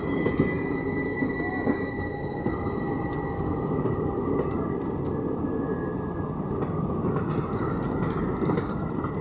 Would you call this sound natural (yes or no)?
yes